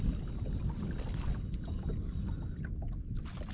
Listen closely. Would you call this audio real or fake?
real